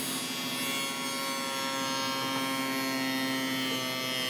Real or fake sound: real